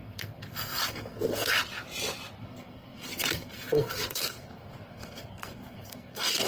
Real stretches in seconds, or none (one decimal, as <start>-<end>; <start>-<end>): 1.6-2.4